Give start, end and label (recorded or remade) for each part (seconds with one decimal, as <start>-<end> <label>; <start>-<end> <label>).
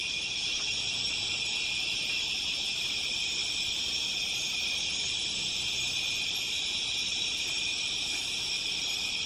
0.0-9.3 recorded